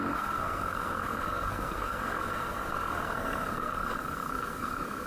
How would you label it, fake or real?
fake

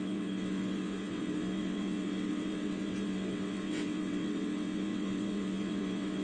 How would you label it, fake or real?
fake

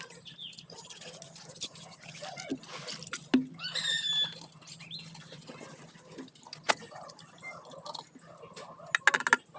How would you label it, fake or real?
real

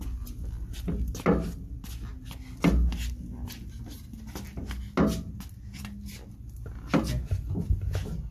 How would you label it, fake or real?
real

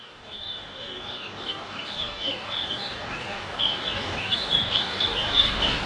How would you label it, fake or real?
fake